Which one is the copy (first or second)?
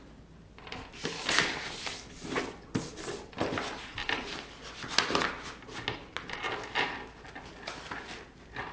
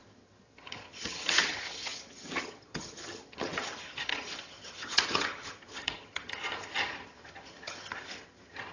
second